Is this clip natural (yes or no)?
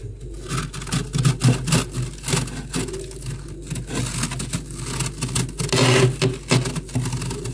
yes